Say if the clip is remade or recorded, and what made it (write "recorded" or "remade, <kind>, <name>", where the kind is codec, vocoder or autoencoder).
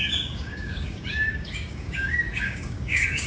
remade, codec, DAC